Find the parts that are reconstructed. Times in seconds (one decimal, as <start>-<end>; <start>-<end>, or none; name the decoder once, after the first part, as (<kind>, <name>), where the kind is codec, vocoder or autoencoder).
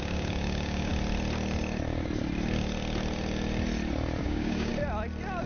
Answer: 0.0-0.9 (codec, DAC); 4.2-4.7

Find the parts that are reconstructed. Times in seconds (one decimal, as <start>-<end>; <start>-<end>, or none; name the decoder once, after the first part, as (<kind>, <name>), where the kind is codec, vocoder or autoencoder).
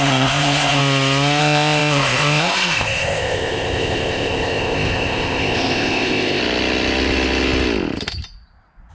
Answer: 0.0-0.8 (codec, ZipCodec); 1.4-6.4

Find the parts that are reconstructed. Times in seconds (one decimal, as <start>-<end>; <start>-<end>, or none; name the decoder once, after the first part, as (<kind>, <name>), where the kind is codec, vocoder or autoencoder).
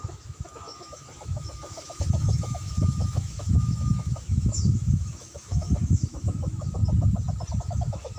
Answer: 0.0-6.8 (autoencoder, DAC-VAE); 7.6-8.2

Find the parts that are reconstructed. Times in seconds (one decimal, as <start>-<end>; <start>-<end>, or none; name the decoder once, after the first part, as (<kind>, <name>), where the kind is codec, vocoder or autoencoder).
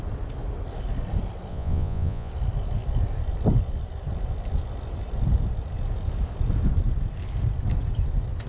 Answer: 1.5-2.3 (vocoder, Vocos)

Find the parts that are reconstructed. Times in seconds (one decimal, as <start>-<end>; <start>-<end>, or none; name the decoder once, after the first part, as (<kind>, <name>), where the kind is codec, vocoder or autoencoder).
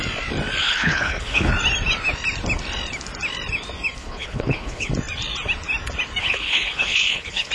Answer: 0.6-1.5 (codec, HILCodec); 4.0-4.9; 6.2-7.5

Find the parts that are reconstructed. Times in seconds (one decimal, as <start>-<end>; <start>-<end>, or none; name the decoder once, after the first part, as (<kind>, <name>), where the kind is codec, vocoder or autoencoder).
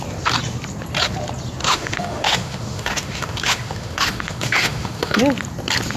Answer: 1.6-5.2 (autoencoder, DAC-VAE)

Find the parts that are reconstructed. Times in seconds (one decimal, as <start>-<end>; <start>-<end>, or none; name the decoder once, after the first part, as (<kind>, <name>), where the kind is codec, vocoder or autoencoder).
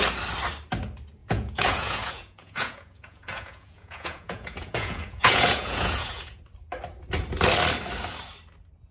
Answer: 1.2-6.4 (vocoder, Vocos)